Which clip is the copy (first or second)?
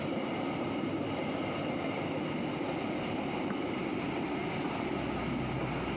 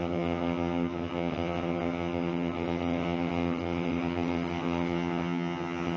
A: second